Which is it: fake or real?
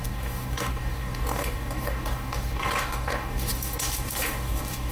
fake